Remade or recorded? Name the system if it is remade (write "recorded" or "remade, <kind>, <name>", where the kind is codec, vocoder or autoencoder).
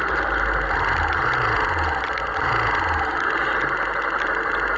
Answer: recorded